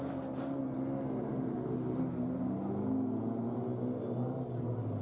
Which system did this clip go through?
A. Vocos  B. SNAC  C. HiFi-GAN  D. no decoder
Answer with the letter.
D